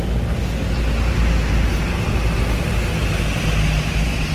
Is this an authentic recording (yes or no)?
yes